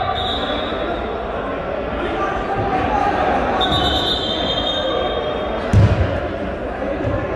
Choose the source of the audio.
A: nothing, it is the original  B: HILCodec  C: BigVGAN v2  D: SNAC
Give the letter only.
A